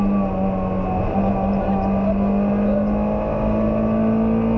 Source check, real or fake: real